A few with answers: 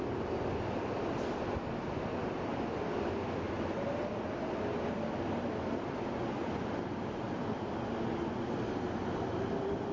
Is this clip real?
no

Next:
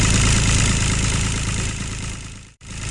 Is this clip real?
no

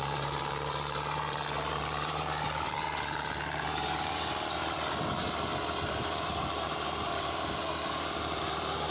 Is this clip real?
no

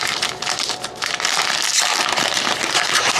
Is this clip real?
yes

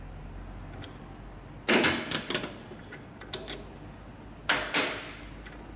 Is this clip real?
yes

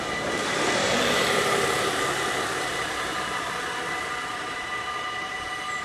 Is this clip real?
no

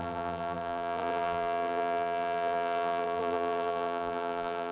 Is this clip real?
no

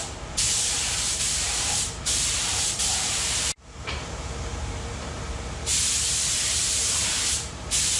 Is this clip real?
no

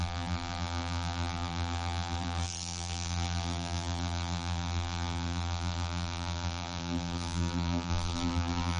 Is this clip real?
no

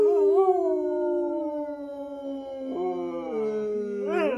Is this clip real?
yes